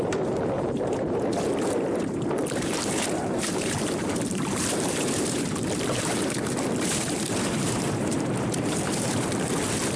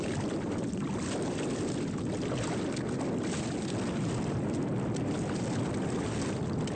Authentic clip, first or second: second